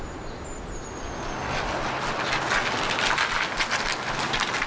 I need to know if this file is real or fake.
real